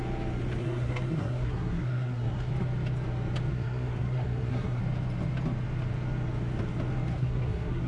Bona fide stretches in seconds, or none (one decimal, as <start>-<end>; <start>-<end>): 0.0-0.6; 2.5-3.5; 4.8-7.1